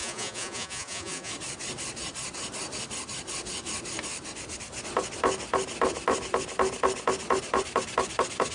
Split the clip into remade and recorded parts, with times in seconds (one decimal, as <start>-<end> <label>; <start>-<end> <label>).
0.0-1.3 remade; 1.3-8.5 recorded